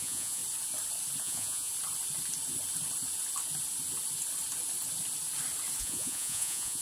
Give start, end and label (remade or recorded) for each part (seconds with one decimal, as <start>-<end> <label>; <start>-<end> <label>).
0.0-0.4 remade; 0.4-1.2 recorded; 1.2-1.7 remade; 1.7-5.8 recorded; 5.8-6.8 remade